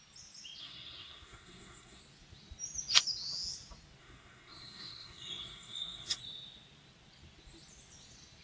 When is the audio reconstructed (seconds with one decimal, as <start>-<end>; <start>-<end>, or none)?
0.6-2.0; 4.0-6.2